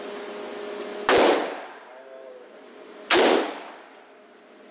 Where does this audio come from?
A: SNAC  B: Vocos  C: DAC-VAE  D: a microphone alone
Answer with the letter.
D